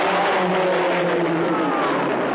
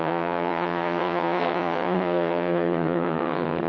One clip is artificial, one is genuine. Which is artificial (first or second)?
second